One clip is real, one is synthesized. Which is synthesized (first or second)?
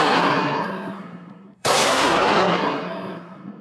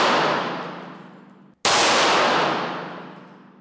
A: first